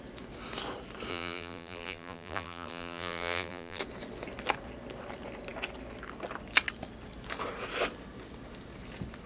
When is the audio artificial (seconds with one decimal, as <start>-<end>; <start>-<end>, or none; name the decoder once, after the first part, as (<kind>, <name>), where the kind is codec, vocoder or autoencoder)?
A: 1.1-3.8 (vocoder, BigVGAN v2)